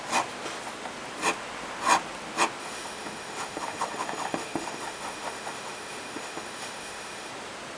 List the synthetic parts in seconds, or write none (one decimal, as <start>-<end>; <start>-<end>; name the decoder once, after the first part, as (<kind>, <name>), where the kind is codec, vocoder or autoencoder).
2.6-7.3 (autoencoder, DAC-VAE)

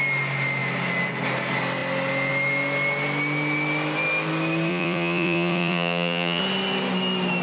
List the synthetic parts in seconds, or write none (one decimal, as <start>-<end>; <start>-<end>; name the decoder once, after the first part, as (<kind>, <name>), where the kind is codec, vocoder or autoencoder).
4.7-6.4 (vocoder, Vocos)